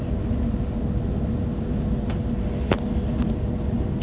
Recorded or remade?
recorded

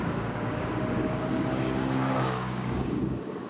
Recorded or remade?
remade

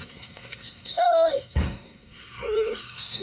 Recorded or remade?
remade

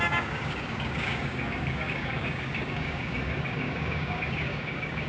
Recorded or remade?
remade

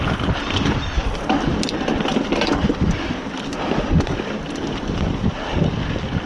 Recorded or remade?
recorded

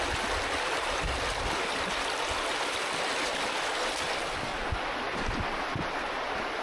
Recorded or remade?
recorded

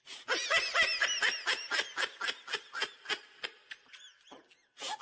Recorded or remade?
recorded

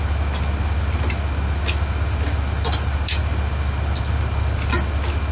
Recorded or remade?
recorded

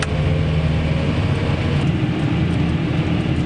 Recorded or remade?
recorded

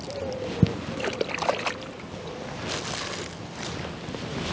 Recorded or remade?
recorded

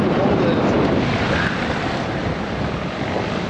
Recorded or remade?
recorded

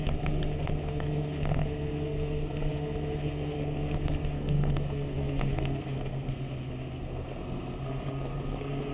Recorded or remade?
remade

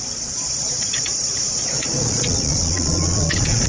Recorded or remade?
remade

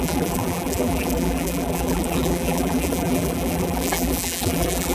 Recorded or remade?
remade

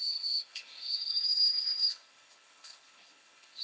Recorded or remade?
remade